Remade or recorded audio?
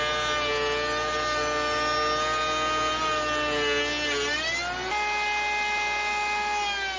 recorded